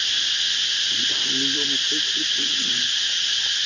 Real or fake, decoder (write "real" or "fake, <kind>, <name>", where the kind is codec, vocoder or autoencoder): real